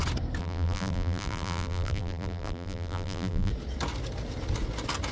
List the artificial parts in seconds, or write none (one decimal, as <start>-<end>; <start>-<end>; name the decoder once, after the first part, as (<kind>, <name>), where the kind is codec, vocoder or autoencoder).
0.4-3.5 (vocoder, BigVGAN v2)